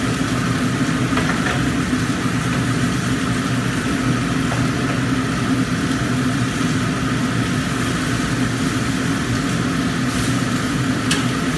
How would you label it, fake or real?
real